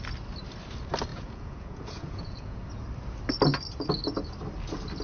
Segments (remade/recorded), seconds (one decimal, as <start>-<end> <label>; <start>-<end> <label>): 0.0-1.1 recorded; 1.1-2.6 remade; 2.6-5.0 recorded